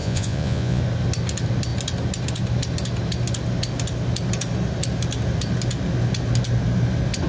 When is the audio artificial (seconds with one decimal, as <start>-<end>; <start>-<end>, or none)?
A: 0.0-0.8